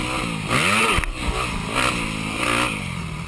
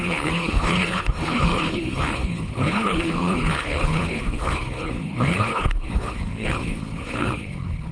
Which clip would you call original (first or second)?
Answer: first